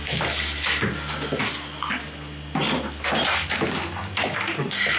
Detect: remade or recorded recorded